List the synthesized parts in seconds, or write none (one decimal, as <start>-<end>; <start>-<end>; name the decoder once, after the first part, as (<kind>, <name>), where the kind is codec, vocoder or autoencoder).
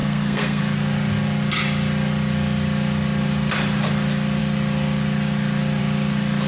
0.0-0.6 (codec, SNAC)